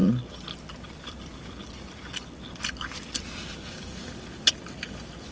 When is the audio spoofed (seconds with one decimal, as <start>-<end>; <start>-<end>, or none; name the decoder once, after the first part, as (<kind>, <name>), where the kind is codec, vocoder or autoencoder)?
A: none